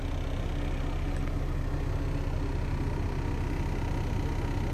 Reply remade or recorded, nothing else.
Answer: recorded